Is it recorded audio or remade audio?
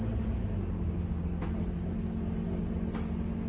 recorded